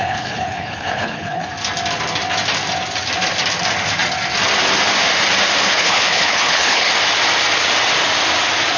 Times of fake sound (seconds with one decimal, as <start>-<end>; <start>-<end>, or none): 0.0-1.5; 5.7-6.9